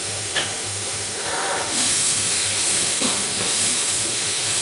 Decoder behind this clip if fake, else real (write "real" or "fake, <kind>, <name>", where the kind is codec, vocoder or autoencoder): fake, autoencoder, DAC-VAE